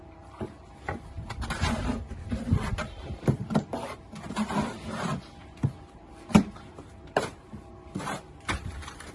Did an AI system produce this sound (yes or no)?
yes